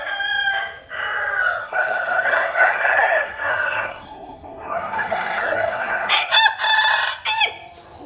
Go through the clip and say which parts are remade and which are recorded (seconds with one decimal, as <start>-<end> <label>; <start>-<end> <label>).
0.0-1.6 recorded; 1.6-6.3 remade; 6.3-8.1 recorded

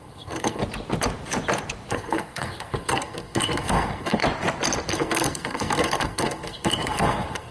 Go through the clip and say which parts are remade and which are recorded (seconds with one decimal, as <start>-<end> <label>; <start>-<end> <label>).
0.0-0.6 remade; 0.6-1.9 recorded; 1.9-4.2 remade; 4.2-4.9 recorded; 4.9-7.5 remade

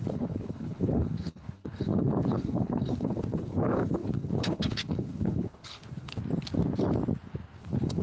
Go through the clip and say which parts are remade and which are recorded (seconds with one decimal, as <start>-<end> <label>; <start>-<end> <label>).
0.0-6.2 remade; 6.2-7.6 recorded; 7.6-8.0 remade

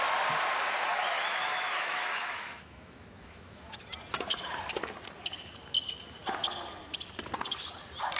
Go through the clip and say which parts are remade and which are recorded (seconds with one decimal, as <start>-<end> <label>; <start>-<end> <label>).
0.0-0.9 recorded; 0.9-3.6 remade; 3.6-8.2 recorded

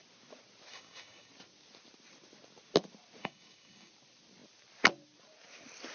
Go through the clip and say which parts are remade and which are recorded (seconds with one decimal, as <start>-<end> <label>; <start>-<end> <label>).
0.0-0.7 recorded; 0.7-1.3 remade; 1.3-3.2 recorded; 3.2-3.9 remade; 3.9-5.9 recorded

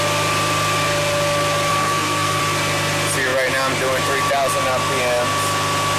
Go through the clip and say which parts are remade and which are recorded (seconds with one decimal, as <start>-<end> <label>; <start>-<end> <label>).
0.0-1.7 recorded; 1.7-2.4 remade; 2.4-6.0 recorded

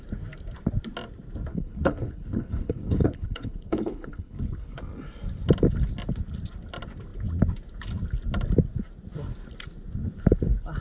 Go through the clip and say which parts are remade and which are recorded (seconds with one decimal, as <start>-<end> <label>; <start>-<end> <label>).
0.0-1.5 recorded; 1.5-4.8 remade; 4.8-10.8 recorded

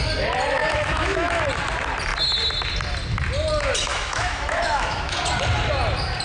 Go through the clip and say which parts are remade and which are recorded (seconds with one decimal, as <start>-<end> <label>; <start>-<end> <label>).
0.0-0.6 recorded; 0.6-1.4 remade; 1.4-3.9 recorded; 3.9-5.2 remade; 5.2-6.2 recorded